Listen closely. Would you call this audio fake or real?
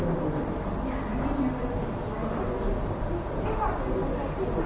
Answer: real